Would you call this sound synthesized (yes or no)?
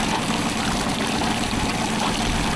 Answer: no